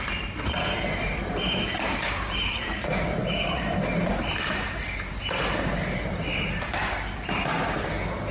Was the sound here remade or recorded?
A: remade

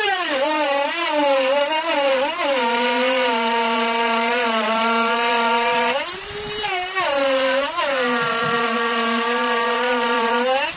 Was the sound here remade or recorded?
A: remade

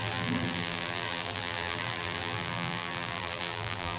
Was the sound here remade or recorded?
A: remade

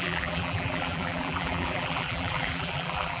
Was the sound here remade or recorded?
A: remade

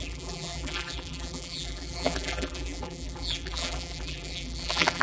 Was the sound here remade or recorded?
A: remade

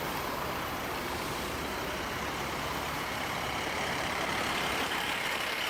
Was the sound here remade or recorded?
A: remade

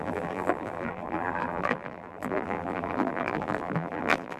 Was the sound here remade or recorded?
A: remade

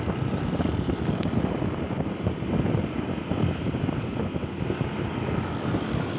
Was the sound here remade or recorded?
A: recorded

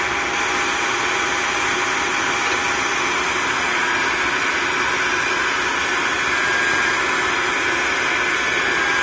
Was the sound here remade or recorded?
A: recorded